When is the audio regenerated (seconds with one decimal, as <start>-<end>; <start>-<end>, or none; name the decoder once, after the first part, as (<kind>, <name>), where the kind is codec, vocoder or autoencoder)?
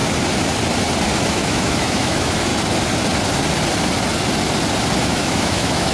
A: 1.3-2.5 (autoencoder, DAC-VAE); 5.0-5.9